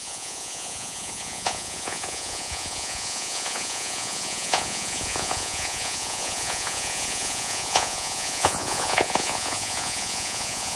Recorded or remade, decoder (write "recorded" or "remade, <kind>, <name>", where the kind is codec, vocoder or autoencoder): remade, vocoder, Vocos